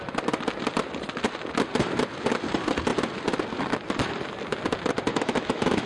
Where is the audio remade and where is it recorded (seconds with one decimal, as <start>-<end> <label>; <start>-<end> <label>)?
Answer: 0.0-5.1 recorded; 5.1-5.9 remade